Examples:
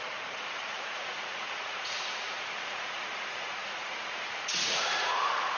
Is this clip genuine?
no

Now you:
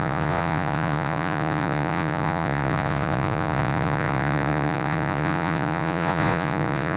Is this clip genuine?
no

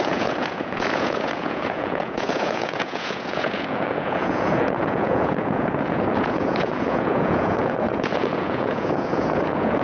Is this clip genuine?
no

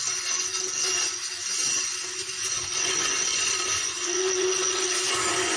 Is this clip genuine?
no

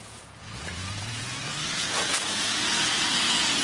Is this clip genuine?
no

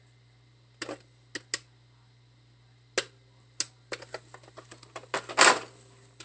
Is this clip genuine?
yes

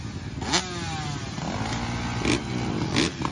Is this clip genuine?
yes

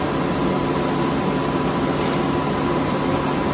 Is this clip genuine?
yes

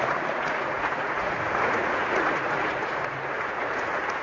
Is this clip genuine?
no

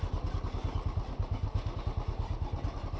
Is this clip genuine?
yes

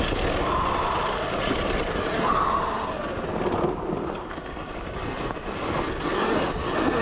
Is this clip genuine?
yes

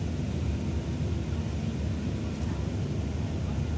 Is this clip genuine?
yes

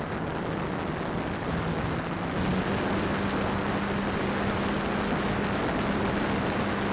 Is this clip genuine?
yes